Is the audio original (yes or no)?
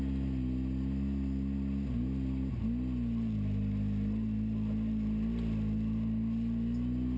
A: yes